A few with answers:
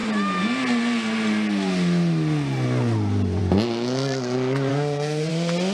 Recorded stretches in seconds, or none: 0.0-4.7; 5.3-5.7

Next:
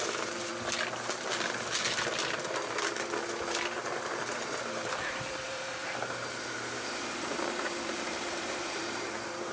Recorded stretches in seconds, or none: 0.5-4.3

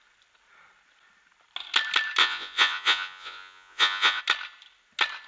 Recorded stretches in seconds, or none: 0.0-2.2; 4.2-5.3